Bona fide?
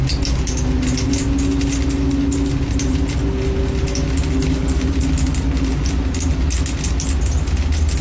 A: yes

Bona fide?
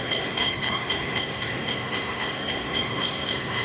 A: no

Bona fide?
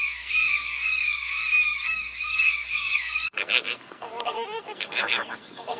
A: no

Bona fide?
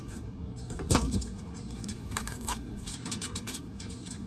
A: no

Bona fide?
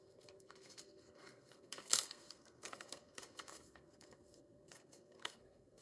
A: no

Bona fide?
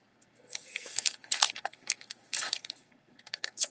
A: no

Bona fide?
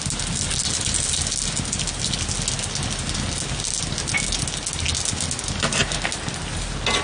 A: yes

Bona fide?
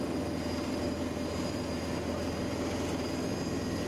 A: yes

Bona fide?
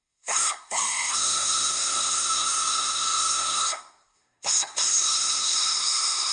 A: no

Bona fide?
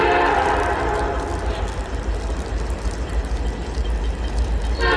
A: yes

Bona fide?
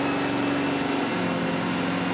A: yes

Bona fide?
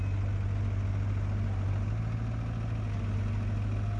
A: yes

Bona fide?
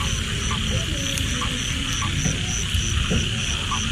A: yes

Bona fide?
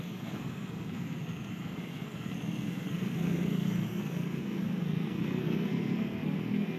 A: no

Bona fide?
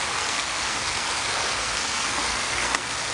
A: no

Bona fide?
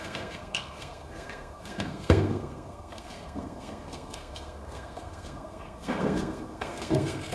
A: no